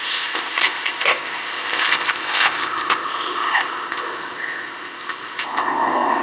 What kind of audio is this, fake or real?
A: fake